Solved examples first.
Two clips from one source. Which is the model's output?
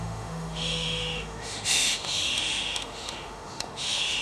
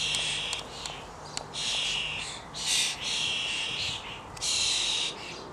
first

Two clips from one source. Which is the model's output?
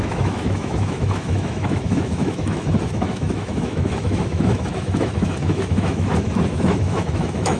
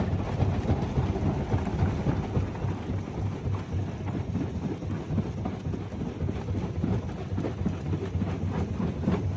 first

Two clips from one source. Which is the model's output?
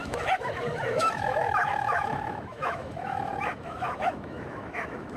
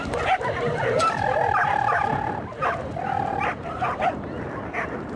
first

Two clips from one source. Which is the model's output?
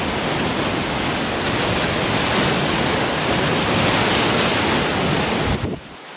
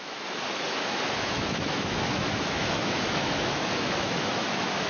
second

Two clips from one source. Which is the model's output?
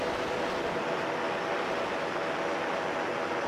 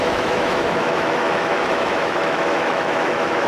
second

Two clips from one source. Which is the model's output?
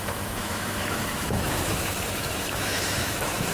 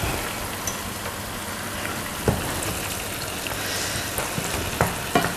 first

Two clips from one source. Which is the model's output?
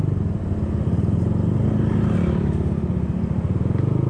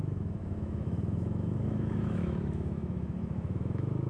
second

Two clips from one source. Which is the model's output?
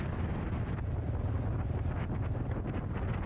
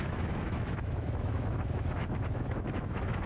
second